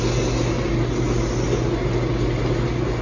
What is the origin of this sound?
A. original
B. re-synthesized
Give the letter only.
A